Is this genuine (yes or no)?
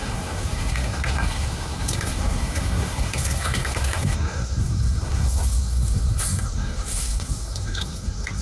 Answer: no